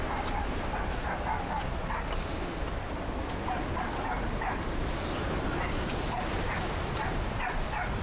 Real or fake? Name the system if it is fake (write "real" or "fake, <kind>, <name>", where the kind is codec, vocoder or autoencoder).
real